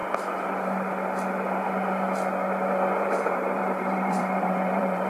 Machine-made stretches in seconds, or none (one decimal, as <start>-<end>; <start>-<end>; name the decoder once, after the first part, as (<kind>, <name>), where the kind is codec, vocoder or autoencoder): 3.0-5.1 (vocoder, BigVGAN v2)